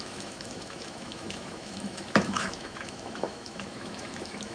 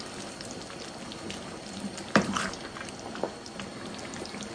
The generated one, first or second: first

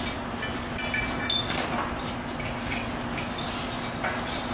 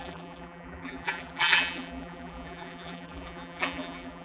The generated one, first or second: second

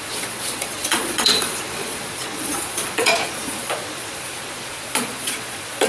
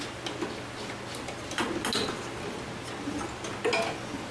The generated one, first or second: first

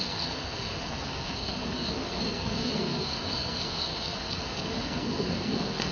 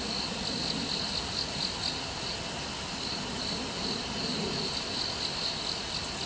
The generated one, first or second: first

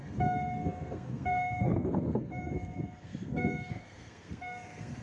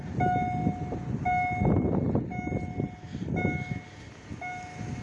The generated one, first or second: first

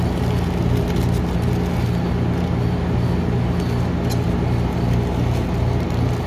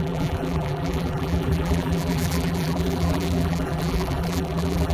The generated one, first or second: second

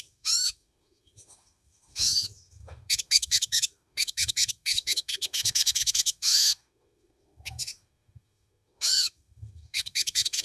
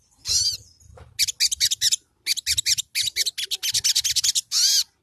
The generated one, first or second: first